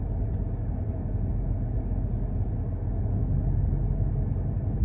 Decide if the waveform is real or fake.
real